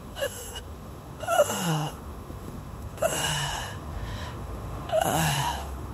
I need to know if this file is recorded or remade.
remade